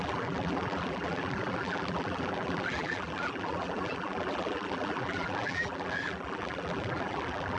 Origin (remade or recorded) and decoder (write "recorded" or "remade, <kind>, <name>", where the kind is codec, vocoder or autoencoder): remade, vocoder, BigVGAN v2